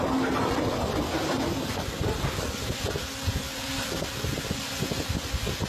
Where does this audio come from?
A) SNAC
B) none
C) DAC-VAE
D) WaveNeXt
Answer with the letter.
B